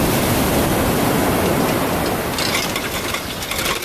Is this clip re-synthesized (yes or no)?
no